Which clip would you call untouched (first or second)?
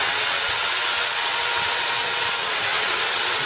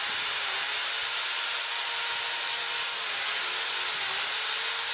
second